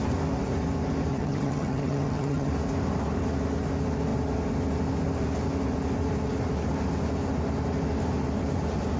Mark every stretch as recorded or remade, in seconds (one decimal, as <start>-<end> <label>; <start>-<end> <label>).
0.0-1.1 recorded; 1.1-2.5 remade; 2.5-9.0 recorded